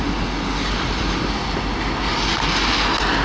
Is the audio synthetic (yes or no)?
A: no